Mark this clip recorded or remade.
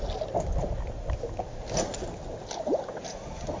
recorded